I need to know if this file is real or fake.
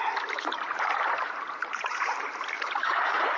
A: fake